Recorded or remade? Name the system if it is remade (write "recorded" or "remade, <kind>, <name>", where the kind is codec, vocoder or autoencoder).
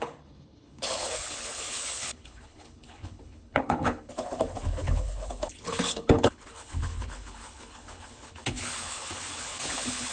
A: remade, codec, HILCodec